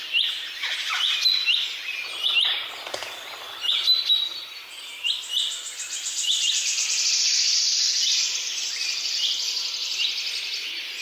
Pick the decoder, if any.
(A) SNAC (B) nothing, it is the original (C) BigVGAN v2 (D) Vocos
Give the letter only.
B